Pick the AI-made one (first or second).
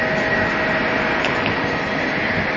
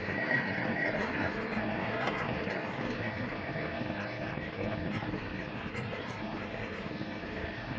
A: second